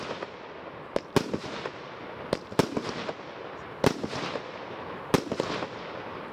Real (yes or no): yes